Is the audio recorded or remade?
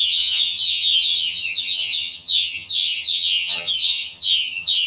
remade